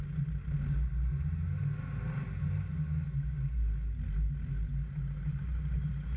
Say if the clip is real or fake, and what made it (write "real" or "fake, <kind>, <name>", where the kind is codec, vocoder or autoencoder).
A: real